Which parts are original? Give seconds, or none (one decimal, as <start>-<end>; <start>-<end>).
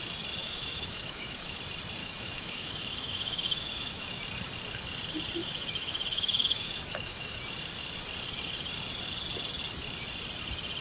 0.0-0.4; 1.6-2.0; 4.2-5.4; 7.4-10.8